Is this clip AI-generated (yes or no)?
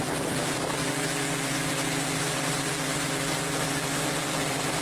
no